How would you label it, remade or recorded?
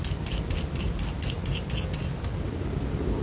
recorded